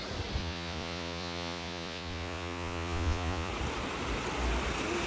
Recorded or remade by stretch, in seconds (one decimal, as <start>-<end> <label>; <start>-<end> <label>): 0.0-0.4 recorded; 0.4-3.5 remade; 3.5-5.1 recorded